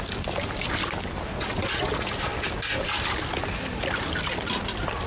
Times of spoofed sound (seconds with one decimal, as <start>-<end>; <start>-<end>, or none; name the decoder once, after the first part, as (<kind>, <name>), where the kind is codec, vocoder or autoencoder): none